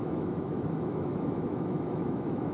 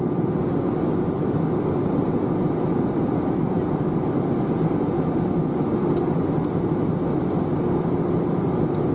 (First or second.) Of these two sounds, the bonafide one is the second